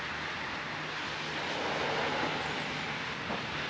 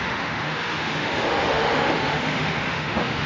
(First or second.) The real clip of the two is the first